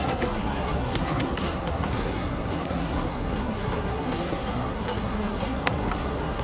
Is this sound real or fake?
fake